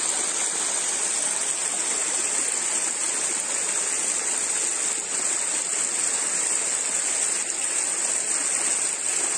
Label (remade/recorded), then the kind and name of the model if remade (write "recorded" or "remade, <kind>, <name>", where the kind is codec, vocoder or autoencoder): recorded